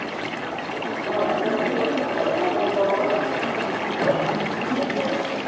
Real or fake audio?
real